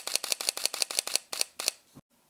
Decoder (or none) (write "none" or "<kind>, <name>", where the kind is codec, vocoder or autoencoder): vocoder, BigVGAN v2